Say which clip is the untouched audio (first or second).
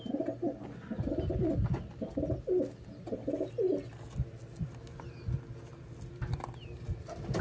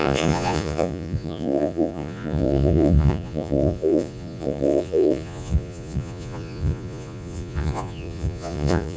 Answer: first